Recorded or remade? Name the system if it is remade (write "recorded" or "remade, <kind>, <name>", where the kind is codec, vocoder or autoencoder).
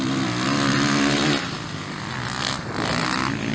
recorded